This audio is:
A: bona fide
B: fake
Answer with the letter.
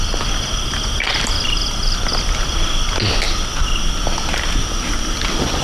A